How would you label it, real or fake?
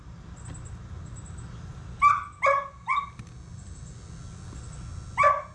real